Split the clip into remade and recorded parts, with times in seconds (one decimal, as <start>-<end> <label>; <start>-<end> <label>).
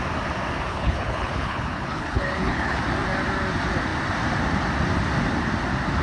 0.0-0.7 recorded; 0.7-2.8 remade; 2.8-6.0 recorded